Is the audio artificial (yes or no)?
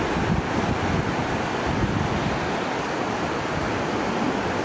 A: no